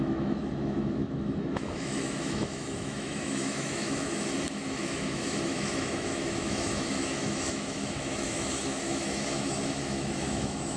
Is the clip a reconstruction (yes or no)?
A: yes